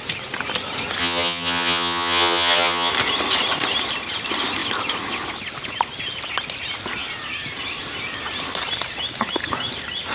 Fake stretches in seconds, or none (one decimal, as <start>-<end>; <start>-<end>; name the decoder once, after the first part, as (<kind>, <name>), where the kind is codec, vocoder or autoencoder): 1.0-2.9 (vocoder, HiFi-GAN)